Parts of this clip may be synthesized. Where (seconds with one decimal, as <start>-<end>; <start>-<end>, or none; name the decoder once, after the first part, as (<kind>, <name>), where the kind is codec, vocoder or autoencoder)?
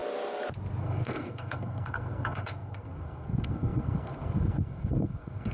0.8-5.5 (codec, SNAC)